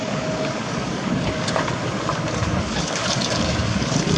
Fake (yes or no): yes